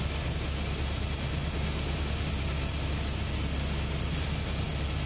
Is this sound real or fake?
real